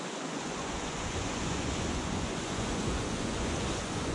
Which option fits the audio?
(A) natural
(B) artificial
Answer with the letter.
B